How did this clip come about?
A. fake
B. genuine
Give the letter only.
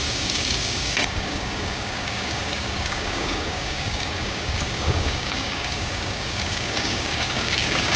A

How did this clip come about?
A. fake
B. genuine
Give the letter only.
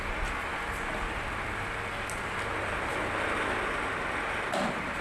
B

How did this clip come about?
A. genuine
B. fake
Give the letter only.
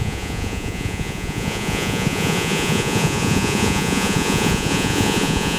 B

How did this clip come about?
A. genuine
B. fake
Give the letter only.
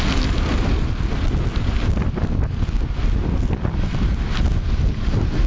A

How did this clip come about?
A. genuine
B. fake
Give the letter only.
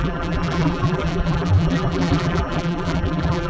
B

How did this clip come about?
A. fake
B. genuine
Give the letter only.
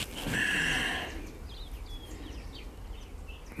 B